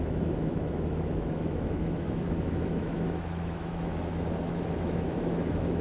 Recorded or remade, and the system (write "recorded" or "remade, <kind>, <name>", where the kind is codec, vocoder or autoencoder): remade, autoencoder, DAC-VAE